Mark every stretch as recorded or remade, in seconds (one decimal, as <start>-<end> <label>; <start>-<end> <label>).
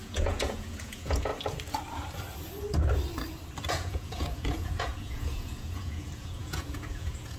0.0-1.3 remade; 1.3-3.7 recorded; 3.7-7.4 remade